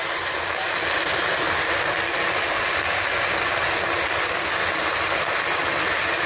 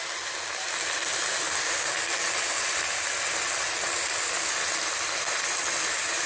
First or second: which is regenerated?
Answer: first